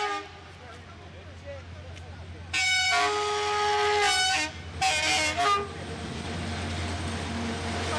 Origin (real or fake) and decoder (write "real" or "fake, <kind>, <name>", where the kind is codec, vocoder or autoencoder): real